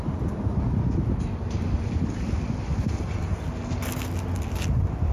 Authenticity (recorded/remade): recorded